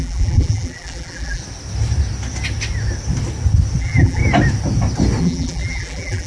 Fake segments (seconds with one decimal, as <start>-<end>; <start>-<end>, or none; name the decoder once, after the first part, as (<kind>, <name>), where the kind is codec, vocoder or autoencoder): 0.0-1.4 (vocoder, BigVGAN v2); 3.8-4.2; 5.2-6.3